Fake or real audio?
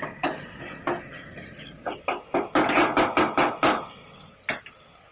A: real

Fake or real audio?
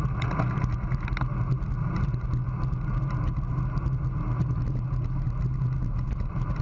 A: real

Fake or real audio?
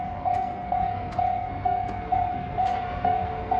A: fake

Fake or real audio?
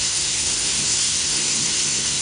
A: fake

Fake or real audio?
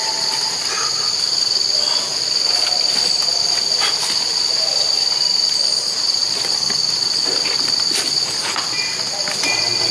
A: real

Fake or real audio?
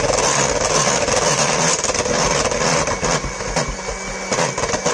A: real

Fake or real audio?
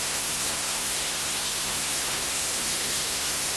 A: fake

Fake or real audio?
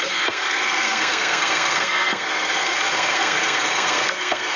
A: fake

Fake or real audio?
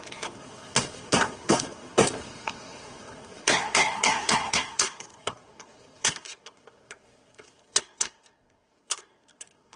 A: fake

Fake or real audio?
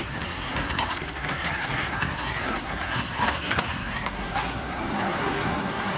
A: fake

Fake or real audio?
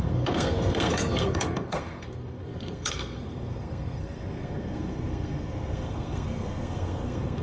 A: fake